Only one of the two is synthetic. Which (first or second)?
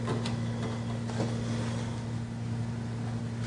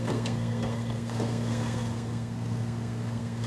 second